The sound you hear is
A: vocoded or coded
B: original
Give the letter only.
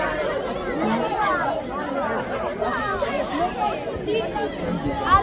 B